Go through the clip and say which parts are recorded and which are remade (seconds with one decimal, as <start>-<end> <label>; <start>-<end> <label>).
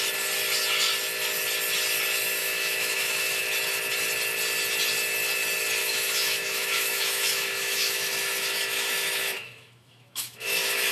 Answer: 0.0-2.4 recorded; 2.4-3.4 remade; 3.4-5.8 recorded; 5.8-10.9 remade